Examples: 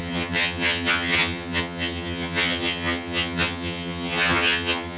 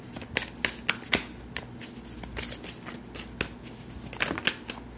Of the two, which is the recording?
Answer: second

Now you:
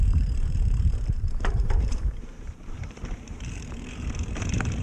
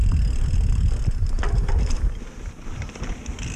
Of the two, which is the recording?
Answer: second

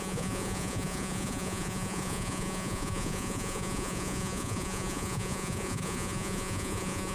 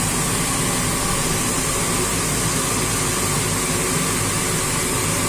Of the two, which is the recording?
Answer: second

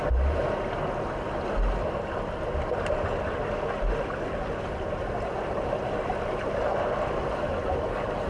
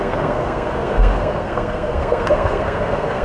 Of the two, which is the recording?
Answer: first